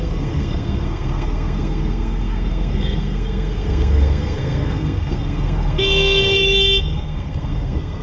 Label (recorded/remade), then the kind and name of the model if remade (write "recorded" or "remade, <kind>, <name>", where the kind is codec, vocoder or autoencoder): remade, codec, SNAC